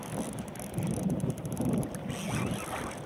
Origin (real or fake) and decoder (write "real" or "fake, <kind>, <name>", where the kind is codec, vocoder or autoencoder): real